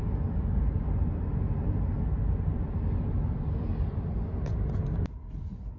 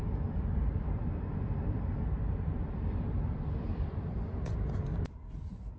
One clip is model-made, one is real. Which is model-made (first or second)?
second